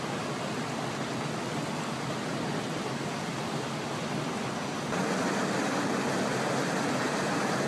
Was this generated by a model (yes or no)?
no